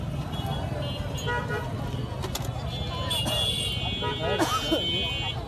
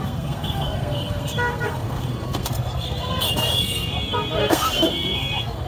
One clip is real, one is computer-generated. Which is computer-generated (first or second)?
second